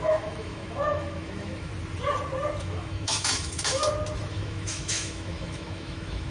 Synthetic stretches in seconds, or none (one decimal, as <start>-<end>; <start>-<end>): 0.0-1.7; 2.6-3.8; 4.3-6.3